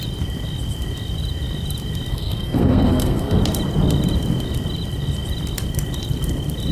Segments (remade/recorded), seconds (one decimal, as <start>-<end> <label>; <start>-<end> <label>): 0.0-2.1 recorded; 2.1-3.4 remade; 3.4-6.7 recorded